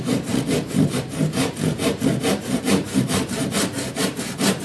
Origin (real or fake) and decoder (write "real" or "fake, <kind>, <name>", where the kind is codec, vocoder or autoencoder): fake, vocoder, BigVGAN v2